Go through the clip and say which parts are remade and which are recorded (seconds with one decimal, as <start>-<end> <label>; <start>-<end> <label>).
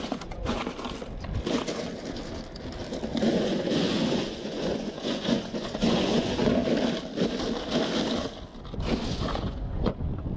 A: 0.0-0.6 remade; 0.6-3.2 recorded; 3.2-6.6 remade; 6.6-9.1 recorded; 9.1-10.4 remade